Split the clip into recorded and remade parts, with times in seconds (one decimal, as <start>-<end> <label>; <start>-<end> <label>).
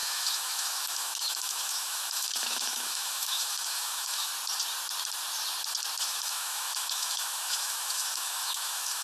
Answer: 0.0-4.3 remade; 4.3-6.0 recorded; 6.0-9.0 remade